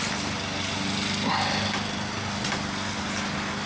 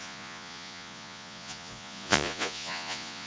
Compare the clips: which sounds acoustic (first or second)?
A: first